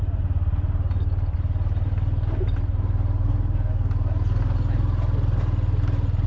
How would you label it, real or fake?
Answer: real